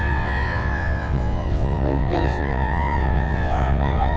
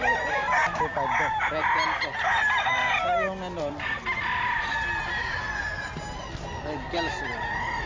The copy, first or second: first